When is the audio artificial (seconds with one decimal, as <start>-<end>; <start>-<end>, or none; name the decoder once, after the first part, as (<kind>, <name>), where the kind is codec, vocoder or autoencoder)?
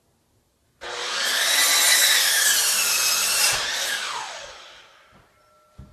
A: 1.0-1.5 (codec, DAC); 1.9-2.5; 3.7-4.8